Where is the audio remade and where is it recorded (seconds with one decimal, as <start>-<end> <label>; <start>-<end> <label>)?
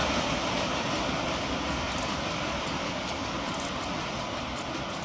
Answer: 0.0-2.8 recorded; 2.8-3.5 remade; 3.5-5.0 recorded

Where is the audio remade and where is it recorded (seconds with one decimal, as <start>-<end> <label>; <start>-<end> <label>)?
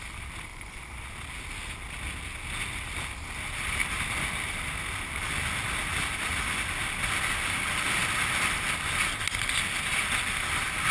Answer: 0.0-0.5 recorded; 0.5-1.0 remade; 1.0-10.9 recorded